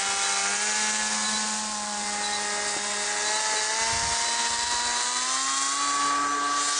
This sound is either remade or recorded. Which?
recorded